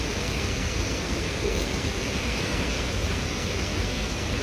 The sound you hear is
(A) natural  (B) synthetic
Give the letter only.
B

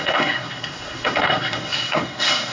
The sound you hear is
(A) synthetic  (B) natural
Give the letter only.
A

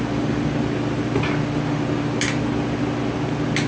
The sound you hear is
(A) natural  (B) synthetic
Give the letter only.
A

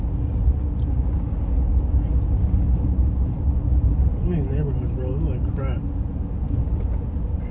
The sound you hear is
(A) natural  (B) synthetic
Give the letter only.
A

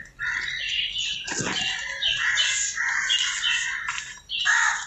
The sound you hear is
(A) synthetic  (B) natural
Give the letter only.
B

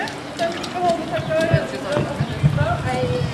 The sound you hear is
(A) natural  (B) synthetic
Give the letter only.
A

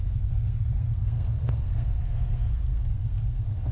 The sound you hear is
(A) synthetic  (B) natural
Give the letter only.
A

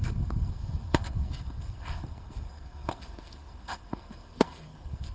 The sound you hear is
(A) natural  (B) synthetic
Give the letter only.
B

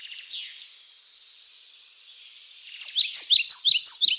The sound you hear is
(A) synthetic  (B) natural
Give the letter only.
B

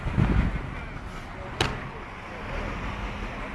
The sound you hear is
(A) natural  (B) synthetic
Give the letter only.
A